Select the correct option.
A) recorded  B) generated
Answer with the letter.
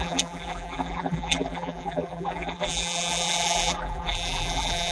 B